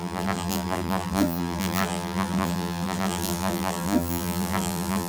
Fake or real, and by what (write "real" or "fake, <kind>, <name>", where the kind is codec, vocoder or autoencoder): fake, vocoder, BigVGAN v2